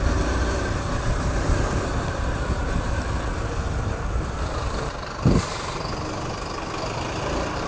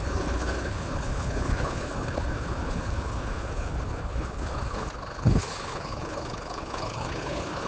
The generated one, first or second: second